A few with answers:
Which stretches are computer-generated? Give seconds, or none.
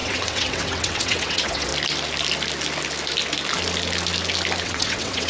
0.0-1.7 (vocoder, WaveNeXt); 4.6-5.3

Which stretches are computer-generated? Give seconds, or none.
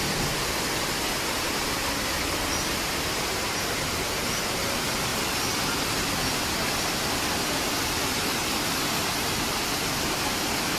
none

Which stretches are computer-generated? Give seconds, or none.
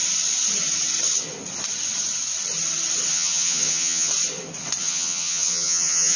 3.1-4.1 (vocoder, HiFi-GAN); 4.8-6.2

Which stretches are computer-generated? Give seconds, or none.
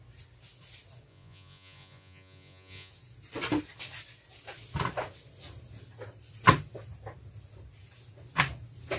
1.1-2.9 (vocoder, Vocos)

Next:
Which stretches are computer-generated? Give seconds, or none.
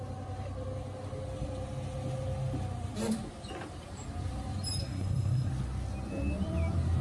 4.8-5.5 (codec, SNAC)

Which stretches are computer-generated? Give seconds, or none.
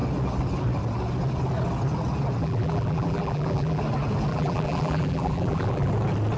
2.4-3.8 (vocoder, BigVGAN v2); 4.3-5.9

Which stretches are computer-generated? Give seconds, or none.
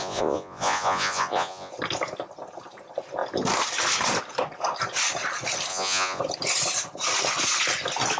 0.0-1.7 (vocoder, Vocos); 5.7-6.2